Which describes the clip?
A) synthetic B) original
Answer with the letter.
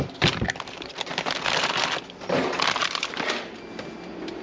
B